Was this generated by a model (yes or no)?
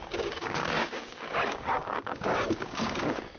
yes